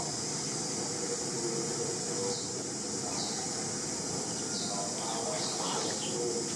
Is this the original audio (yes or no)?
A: yes